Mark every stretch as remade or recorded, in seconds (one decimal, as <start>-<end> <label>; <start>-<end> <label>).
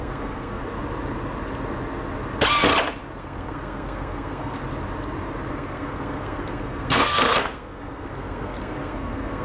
0.0-0.6 remade; 0.6-3.2 recorded; 3.2-4.6 remade; 4.6-5.5 recorded; 5.5-9.4 remade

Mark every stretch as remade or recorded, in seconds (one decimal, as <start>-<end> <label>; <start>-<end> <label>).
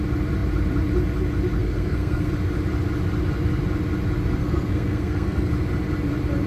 0.0-1.6 recorded; 1.6-2.3 remade; 2.3-4.4 recorded; 4.4-5.5 remade; 5.5-6.5 recorded